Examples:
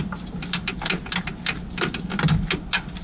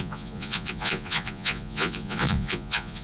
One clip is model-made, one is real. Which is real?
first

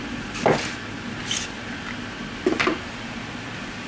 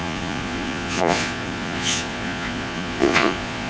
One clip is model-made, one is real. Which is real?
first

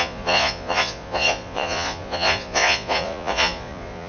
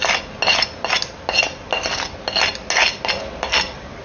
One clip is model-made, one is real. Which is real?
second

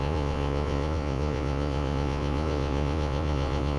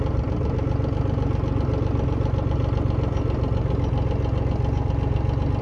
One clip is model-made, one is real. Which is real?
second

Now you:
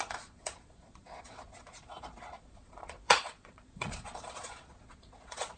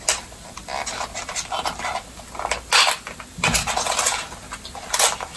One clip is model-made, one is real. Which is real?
second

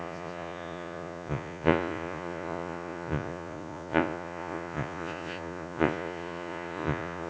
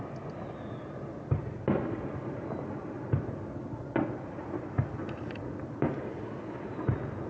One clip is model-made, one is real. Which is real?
second